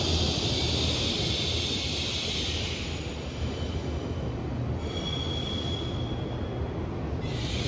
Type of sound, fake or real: real